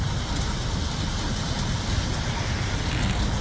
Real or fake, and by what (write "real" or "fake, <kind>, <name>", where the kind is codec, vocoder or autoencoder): real